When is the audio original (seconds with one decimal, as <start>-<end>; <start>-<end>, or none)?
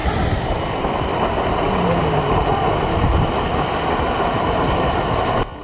1.5-5.6